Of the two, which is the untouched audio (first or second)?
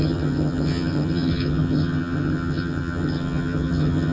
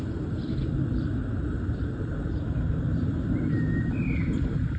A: second